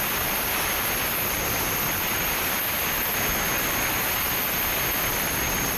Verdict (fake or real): real